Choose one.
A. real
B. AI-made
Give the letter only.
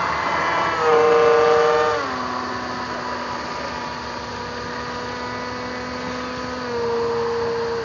A